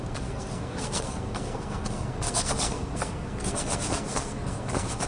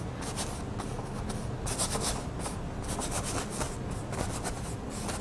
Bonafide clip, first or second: second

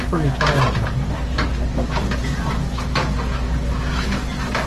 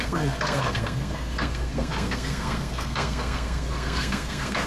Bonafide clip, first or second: first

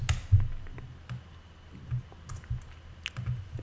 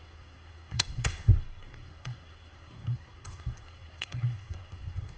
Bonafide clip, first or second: first